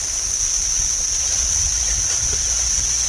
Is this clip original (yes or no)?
yes